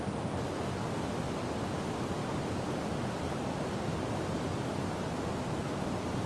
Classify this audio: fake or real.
real